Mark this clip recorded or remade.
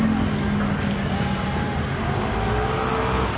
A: recorded